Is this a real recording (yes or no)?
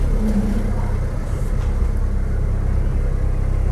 yes